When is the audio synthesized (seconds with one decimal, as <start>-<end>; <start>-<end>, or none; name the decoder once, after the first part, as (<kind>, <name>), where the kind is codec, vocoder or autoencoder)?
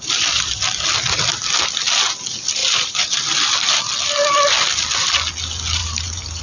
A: 2.6-3.7 (vocoder, BigVGAN v2); 5.8-6.4